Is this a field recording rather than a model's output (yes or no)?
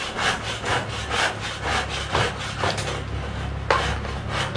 yes